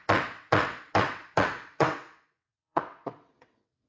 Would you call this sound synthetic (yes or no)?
yes